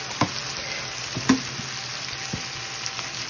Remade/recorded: recorded